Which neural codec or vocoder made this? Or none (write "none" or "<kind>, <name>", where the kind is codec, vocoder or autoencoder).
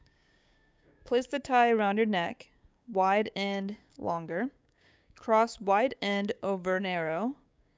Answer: codec, DAC